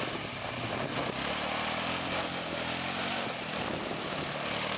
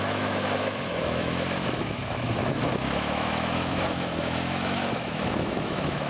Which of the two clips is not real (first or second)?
second